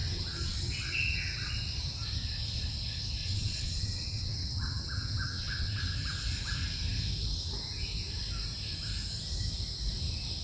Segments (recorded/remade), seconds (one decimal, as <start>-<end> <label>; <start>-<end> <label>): 0.0-1.5 remade; 1.5-3.2 recorded; 3.2-5.8 remade; 5.8-10.4 recorded